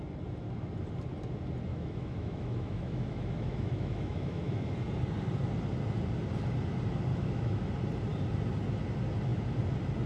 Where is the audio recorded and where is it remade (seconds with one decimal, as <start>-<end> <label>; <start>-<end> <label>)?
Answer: 0.0-1.7 recorded; 1.7-4.7 remade; 4.7-7.1 recorded; 7.1-7.7 remade; 7.7-10.1 recorded